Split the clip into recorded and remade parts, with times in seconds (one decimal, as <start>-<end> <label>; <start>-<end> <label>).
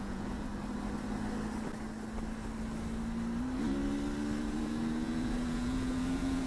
0.0-0.5 remade; 0.5-4.4 recorded; 4.4-6.5 remade